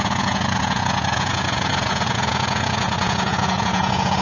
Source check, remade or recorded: remade